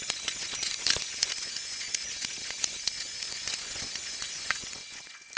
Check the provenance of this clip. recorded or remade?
remade